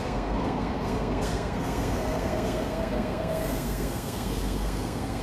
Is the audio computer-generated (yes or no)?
yes